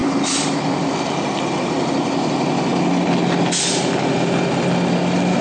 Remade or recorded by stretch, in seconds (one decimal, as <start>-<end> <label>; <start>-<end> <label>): 0.0-5.4 recorded